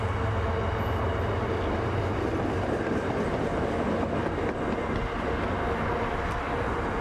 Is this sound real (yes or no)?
yes